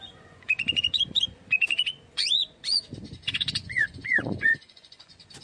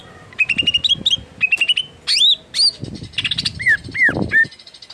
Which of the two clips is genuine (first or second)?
second